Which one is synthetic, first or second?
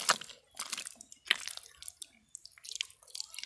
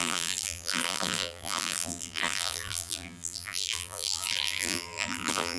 second